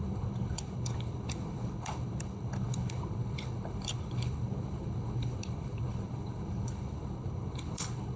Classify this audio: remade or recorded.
remade